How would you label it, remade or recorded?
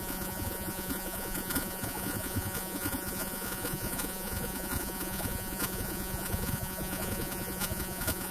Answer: remade